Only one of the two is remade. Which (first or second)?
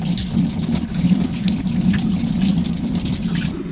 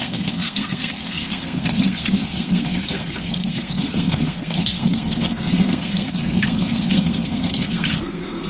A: second